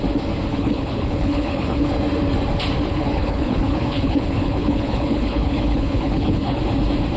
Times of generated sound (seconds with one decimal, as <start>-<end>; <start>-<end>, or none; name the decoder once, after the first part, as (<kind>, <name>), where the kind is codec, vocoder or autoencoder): 0.5-1.9 (codec, HILCodec); 2.9-6.6